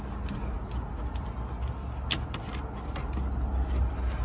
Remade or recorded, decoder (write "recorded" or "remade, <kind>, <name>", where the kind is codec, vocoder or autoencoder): recorded